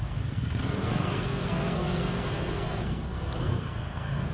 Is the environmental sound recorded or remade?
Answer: remade